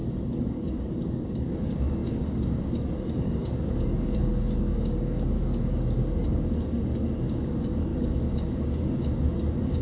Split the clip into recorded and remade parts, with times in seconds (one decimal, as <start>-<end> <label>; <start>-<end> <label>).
0.0-9.8 remade